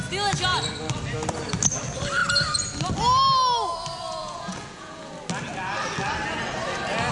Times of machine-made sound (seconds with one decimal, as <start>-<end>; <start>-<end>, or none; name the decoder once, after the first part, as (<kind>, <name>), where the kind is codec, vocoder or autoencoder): 4.2-5.1 (vocoder, Vocos)